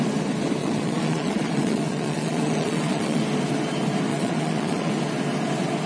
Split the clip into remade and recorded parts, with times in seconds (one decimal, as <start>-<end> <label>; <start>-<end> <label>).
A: 0.0-0.6 recorded; 0.6-3.2 remade; 3.2-4.1 recorded; 4.1-4.9 remade; 4.9-5.9 recorded